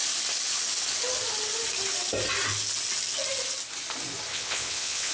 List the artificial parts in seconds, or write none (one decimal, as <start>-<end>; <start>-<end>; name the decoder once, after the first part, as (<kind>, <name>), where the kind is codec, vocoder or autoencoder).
4.3-5.1 (vocoder, WaveNeXt)

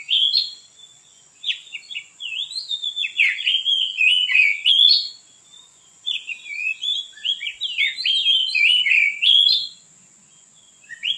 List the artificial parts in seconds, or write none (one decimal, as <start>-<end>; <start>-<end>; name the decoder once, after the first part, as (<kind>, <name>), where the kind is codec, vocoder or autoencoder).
0.0-7.5 (vocoder, Vocos); 8.5-11.2